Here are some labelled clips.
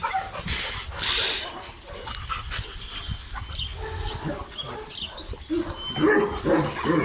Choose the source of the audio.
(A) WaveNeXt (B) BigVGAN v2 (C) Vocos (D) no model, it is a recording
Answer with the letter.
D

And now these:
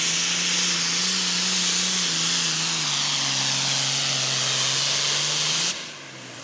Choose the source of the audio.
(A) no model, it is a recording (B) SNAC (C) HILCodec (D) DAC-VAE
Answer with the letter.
A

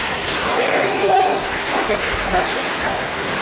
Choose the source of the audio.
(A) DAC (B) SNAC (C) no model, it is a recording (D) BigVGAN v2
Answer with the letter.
B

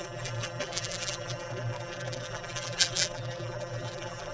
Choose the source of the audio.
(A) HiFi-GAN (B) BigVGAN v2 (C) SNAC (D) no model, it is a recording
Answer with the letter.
B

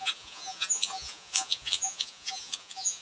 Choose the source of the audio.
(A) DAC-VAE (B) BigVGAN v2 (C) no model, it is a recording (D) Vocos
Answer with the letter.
D